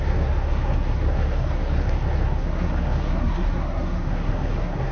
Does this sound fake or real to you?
fake